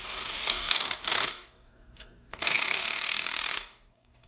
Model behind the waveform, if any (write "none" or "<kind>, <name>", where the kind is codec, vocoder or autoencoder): codec, DAC